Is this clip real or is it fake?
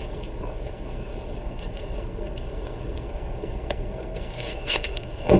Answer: fake